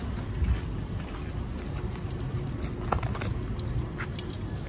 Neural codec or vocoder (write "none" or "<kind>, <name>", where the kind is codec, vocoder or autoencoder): none